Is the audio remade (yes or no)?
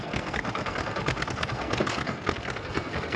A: yes